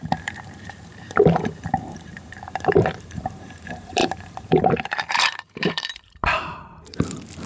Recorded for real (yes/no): no